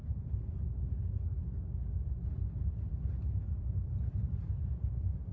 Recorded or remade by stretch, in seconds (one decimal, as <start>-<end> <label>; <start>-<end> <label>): 0.0-1.9 recorded; 1.9-5.3 remade